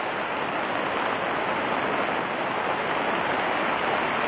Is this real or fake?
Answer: real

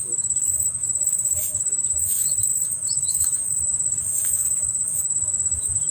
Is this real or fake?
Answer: fake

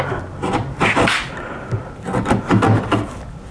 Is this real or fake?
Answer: real